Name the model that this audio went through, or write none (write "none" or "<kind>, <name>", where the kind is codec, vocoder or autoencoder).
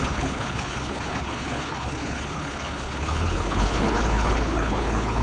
codec, HILCodec